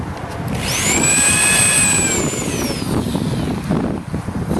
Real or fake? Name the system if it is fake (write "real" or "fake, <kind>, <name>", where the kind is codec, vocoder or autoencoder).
real